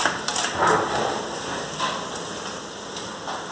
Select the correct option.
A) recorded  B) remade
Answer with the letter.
A